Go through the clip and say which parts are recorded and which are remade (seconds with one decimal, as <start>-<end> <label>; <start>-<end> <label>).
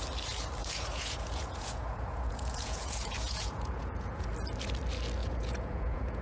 0.0-0.6 recorded; 0.6-4.3 remade; 4.3-5.2 recorded; 5.2-6.2 remade